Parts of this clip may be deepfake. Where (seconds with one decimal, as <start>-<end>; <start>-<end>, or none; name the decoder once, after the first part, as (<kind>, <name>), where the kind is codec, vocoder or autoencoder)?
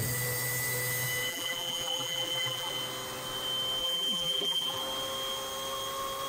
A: 1.3-2.7 (vocoder, BigVGAN v2); 3.8-4.8